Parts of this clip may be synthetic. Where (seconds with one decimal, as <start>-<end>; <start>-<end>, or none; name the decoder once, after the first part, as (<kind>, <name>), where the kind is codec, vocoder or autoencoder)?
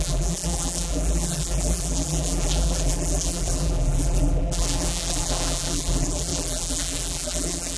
0.0-7.8 (vocoder, BigVGAN v2)